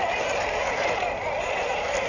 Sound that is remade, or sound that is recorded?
recorded